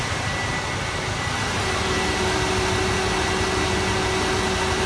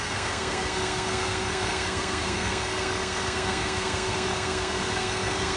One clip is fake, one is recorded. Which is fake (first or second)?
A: second